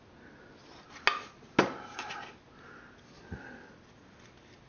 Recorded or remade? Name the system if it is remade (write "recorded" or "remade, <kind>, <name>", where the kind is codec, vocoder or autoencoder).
recorded